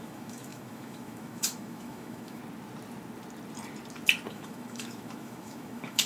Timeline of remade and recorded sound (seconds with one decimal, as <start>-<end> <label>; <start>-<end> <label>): 0.0-2.4 remade; 2.4-4.3 recorded; 4.3-6.1 remade